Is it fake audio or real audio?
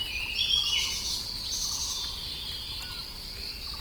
real